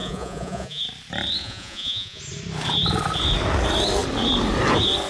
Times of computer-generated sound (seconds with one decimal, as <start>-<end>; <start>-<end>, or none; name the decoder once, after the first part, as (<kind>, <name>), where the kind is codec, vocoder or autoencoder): 0.0-0.8 (vocoder, Vocos); 1.4-2.2